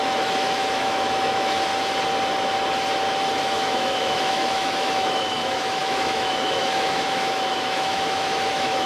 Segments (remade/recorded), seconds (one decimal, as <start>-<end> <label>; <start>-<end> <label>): 0.0-1.7 remade; 1.7-3.4 recorded; 3.4-8.9 remade